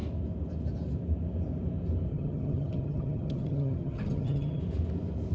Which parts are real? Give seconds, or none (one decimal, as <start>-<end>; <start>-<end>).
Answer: 0.0-2.1; 4.6-5.3